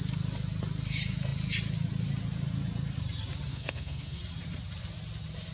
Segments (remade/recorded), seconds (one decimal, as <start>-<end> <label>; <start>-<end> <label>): 0.0-3.5 recorded; 3.5-4.2 remade; 4.2-5.5 recorded